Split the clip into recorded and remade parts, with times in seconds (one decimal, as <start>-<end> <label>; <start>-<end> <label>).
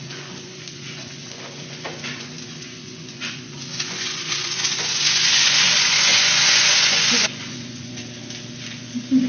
0.0-8.0 remade; 8.0-8.5 recorded; 8.5-9.3 remade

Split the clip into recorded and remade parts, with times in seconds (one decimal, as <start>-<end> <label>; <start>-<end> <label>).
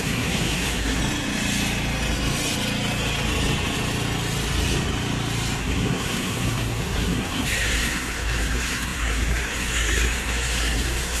0.0-1.0 remade; 1.0-5.6 recorded; 5.6-11.2 remade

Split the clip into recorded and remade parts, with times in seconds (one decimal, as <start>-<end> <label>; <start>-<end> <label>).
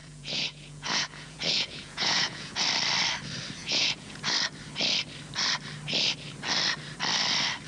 0.0-2.6 remade; 2.6-3.6 recorded; 3.6-4.2 remade; 4.2-7.7 recorded